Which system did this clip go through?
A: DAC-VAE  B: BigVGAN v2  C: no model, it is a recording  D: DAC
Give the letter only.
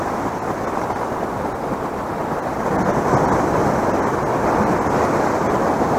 C